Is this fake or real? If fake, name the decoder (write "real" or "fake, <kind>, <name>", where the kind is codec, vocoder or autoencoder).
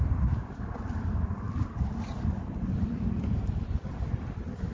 real